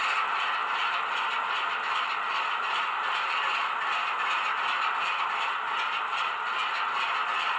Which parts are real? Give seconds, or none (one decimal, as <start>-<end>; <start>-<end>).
0.0-7.6